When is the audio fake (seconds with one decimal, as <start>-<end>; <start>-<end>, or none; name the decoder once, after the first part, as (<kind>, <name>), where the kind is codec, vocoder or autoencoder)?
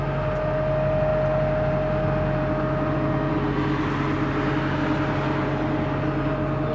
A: none